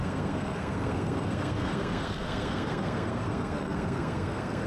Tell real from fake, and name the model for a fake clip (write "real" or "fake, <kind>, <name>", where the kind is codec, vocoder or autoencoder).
fake, codec, SNAC